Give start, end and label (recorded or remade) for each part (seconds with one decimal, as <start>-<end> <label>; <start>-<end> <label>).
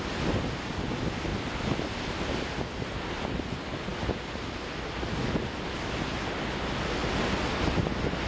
0.0-8.3 recorded